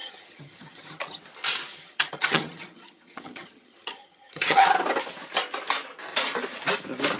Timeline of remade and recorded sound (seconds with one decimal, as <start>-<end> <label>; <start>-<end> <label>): 0.0-1.2 remade; 1.2-1.7 recorded; 1.7-4.6 remade; 4.6-7.2 recorded